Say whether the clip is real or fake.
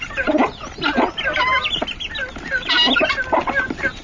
real